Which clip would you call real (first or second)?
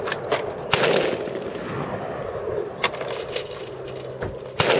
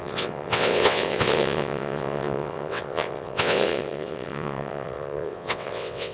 first